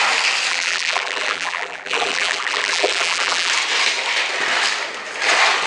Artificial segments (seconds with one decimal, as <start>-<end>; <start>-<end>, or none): 0.5-3.5